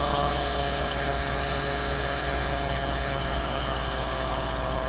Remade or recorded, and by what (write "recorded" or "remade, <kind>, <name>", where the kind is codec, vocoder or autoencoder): remade, codec, HILCodec